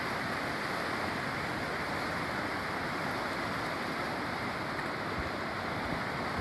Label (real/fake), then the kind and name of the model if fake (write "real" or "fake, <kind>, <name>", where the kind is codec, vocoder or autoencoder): real